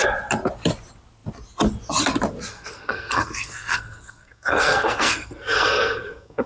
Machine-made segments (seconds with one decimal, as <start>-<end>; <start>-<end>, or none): 2.5-6.5